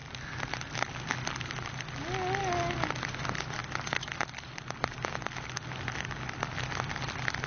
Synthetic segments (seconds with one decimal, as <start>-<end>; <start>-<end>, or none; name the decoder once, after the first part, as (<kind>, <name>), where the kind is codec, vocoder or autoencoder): none